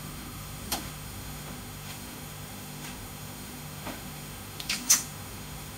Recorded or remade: remade